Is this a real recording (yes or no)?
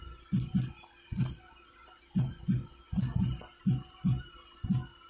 yes